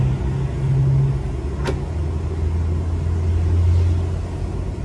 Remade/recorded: recorded